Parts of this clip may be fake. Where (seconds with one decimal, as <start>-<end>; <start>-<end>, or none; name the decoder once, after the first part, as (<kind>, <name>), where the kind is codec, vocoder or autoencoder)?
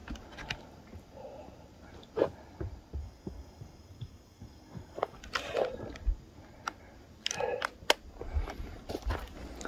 3.0-5.2 (codec, DAC)